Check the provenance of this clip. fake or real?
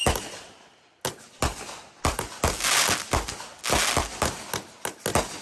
real